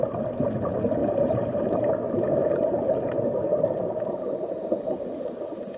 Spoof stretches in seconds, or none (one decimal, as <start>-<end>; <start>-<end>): 1.0-1.8; 2.4-5.0